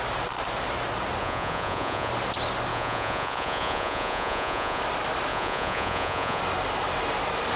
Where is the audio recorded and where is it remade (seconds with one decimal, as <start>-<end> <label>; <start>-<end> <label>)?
0.0-1.2 recorded; 1.2-2.1 remade; 2.1-2.7 recorded; 2.7-4.8 remade; 4.8-5.3 recorded; 5.3-6.4 remade; 6.4-7.6 recorded

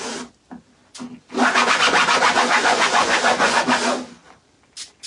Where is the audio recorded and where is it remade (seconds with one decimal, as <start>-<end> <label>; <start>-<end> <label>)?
0.0-1.5 recorded; 1.5-3.6 remade; 3.6-5.1 recorded

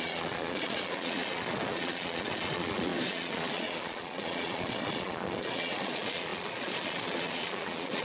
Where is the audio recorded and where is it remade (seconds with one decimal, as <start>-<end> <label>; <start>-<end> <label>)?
0.0-8.0 remade

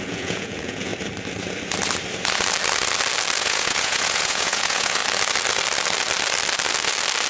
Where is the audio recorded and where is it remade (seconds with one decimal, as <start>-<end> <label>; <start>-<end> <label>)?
0.0-0.9 remade; 0.9-3.4 recorded; 3.4-5.0 remade; 5.0-7.3 recorded

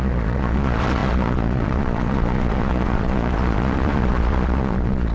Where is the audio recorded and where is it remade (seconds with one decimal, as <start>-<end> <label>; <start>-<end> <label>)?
0.0-5.1 remade